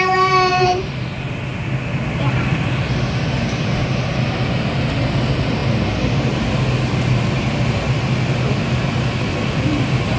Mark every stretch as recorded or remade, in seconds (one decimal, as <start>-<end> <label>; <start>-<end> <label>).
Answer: 0.0-0.5 recorded; 0.5-1.3 remade; 1.3-10.2 recorded